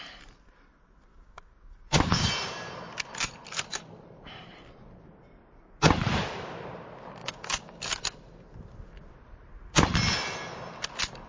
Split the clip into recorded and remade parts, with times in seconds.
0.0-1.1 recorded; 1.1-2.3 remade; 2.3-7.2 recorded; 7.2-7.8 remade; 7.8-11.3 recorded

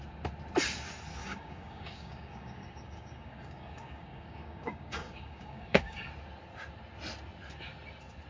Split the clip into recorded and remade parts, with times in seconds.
0.0-1.2 recorded; 1.2-6.1 remade; 6.1-8.3 recorded